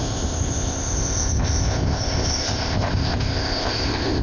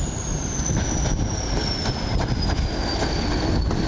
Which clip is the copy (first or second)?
first